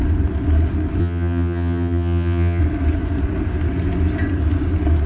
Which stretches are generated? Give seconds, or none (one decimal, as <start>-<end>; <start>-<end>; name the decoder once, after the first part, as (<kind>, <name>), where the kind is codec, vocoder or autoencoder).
1.0-2.6 (vocoder, HiFi-GAN)